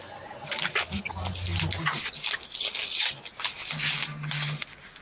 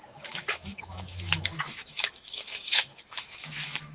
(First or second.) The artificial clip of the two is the second